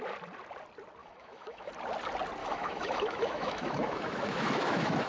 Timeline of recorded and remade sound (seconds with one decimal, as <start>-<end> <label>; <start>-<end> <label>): 0.0-1.0 recorded; 1.0-1.7 remade; 1.7-2.4 recorded; 2.4-5.1 remade